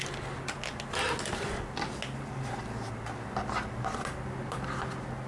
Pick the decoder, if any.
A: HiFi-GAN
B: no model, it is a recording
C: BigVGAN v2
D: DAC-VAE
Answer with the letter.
B